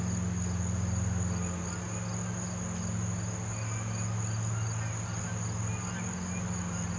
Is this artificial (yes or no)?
no